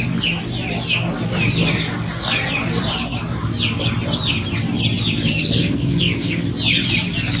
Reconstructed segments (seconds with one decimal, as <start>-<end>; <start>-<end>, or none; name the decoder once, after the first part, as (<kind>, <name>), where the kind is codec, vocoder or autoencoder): 5.4-6.5 (codec, SNAC)